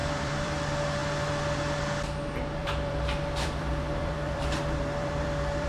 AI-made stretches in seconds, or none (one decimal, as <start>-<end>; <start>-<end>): 0.0-0.6; 2.6-5.7